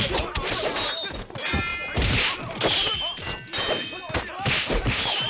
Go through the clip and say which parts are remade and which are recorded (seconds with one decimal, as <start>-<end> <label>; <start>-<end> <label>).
0.0-5.3 recorded